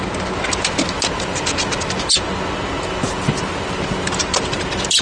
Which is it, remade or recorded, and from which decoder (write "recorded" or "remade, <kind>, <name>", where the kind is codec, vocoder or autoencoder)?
recorded